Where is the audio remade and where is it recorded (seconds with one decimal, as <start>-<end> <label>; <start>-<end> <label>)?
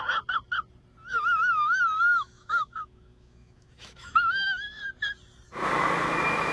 0.0-1.4 recorded; 1.4-4.8 remade; 4.8-6.5 recorded